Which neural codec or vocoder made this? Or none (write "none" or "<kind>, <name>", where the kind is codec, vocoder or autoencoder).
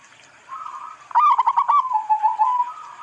none